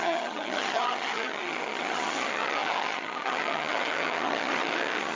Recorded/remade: remade